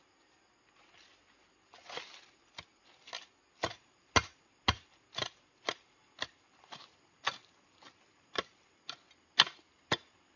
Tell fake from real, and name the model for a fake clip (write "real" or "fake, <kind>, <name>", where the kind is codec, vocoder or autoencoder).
real